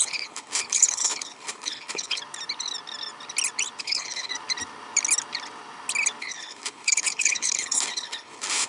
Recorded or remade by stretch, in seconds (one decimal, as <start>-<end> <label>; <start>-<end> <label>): 0.0-2.2 remade; 2.2-3.8 recorded; 3.8-4.3 remade; 4.3-6.2 recorded; 6.2-8.7 remade